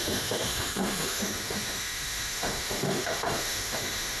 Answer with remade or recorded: remade